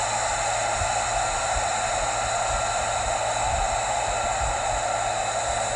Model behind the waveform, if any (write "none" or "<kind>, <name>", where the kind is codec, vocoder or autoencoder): none